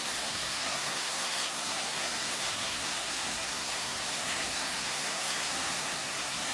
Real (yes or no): no